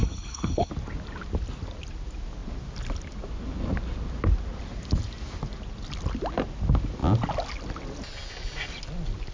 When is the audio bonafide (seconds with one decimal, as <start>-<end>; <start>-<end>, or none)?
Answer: 0.7-9.3